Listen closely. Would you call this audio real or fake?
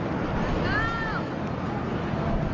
real